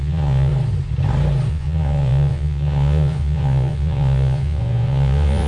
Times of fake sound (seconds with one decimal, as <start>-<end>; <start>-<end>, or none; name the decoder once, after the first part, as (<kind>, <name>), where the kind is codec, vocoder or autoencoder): 0.0-0.5 (vocoder, Vocos); 1.5-5.5